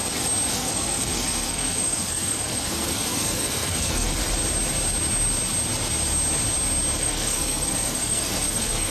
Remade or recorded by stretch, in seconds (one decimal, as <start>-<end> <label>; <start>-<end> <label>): 0.0-0.5 recorded; 0.5-4.1 remade; 4.1-7.0 recorded; 7.0-8.9 remade